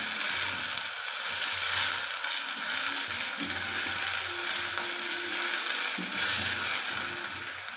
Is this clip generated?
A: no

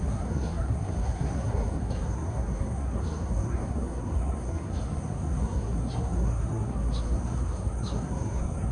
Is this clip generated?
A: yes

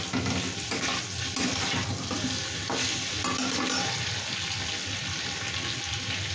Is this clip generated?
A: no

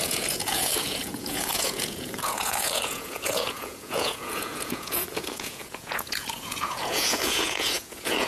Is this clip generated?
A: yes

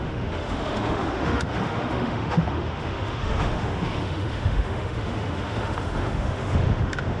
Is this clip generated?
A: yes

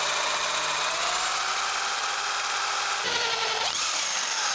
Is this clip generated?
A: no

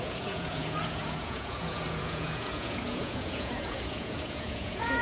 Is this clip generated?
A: yes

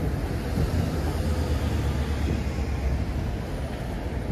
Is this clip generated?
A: no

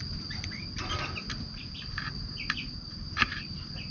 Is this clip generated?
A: no